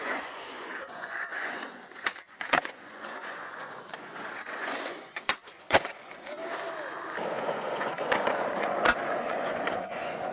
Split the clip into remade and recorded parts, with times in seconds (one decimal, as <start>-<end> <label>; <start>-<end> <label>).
0.0-6.4 remade; 6.4-7.3 recorded; 7.3-10.3 remade